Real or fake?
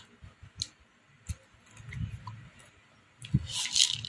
real